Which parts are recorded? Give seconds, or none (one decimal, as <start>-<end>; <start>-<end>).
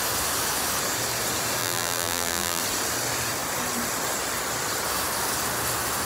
0.0-1.6; 2.6-6.0